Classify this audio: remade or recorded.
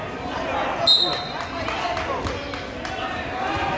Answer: recorded